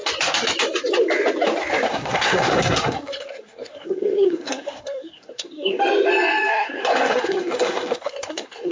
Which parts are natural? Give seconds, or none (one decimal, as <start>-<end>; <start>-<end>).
0.0-1.9; 5.8-6.5